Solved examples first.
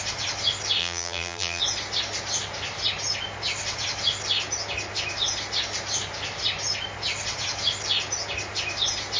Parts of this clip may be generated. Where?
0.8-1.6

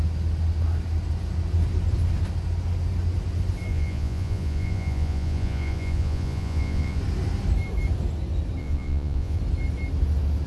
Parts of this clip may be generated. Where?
3.7-7.0; 8.6-9.4

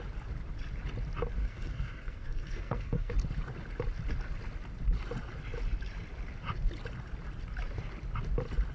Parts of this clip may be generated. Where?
1.4-3.1

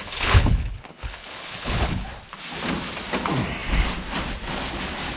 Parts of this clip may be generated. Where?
0.0-2.1

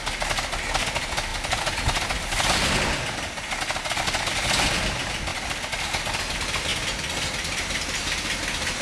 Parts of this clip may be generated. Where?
1.3-2.8

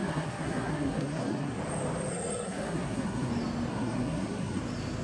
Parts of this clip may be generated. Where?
0.0-1.6; 2.1-3.3; 3.7-4.6

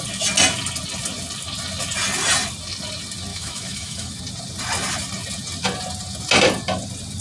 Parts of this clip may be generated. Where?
3.3-4.2